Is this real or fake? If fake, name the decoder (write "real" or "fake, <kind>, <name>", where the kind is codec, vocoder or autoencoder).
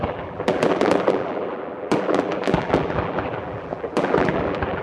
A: fake, vocoder, BigVGAN v2